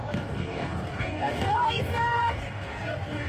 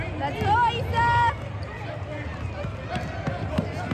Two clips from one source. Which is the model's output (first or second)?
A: first